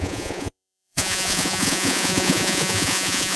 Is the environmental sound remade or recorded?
remade